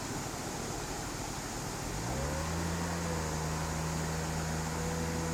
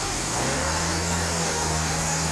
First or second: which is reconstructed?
second